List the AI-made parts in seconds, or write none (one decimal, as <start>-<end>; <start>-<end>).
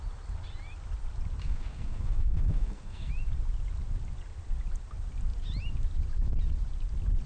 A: 1.4-3.1